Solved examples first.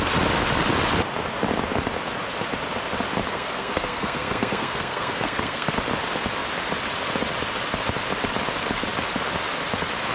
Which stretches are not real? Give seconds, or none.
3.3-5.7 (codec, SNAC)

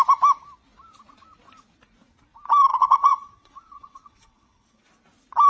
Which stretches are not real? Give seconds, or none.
2.7-4.8 (vocoder, WaveNeXt)

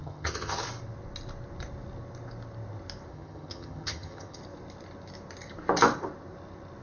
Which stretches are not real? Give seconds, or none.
0.0-0.6 (vocoder, HiFi-GAN); 3.1-4.4

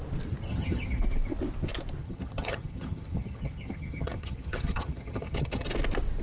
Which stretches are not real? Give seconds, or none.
0.5-1.0 (vocoder, HiFi-GAN); 2.0-5.7

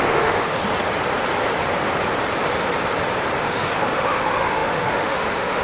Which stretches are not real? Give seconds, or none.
0.0-0.6 (autoencoder, DAC-VAE); 3.4-5.6